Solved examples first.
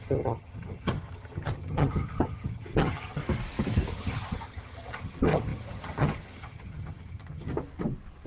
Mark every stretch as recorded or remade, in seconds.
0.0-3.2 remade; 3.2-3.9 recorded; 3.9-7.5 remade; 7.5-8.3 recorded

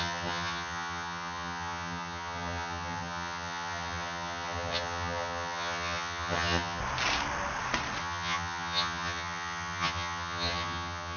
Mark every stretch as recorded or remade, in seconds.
0.0-6.8 remade; 6.8-8.0 recorded; 8.0-11.2 remade

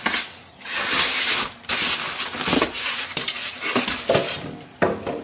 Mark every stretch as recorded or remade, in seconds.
0.0-0.5 recorded; 0.5-1.1 remade; 1.1-5.2 recorded